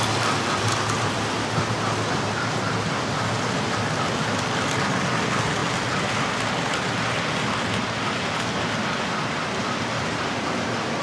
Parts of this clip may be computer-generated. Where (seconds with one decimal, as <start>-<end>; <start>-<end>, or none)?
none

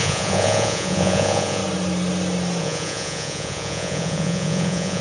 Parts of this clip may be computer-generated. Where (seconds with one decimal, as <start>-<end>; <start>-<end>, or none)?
0.0-1.6; 2.6-5.0

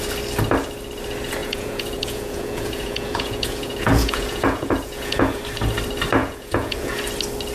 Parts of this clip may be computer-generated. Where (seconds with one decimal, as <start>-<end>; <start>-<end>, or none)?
1.4-5.4; 6.2-7.0

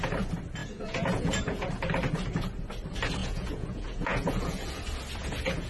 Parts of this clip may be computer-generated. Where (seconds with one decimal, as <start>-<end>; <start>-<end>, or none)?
0.6-1.7; 3.2-4.8; 5.2-5.7

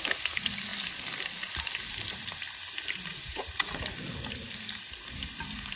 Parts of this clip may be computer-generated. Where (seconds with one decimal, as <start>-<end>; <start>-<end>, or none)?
3.1-3.8

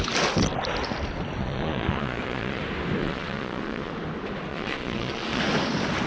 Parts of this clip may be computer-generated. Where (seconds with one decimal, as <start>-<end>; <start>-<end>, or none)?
1.4-2.6; 3.0-3.9; 4.5-5.4